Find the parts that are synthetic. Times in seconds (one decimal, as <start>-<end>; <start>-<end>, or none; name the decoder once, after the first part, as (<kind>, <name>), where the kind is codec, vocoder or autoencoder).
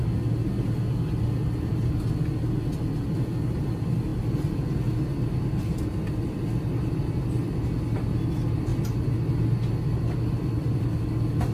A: none